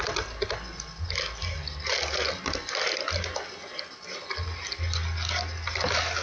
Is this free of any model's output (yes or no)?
yes